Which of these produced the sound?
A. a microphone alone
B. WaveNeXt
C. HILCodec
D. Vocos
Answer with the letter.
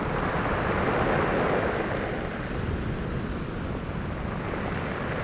A